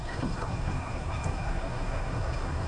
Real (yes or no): no